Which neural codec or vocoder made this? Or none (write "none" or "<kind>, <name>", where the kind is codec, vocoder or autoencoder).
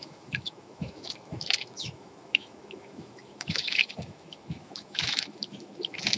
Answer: autoencoder, DAC-VAE